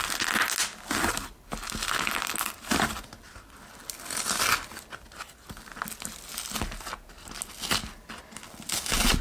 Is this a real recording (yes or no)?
yes